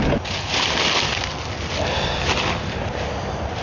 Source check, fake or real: real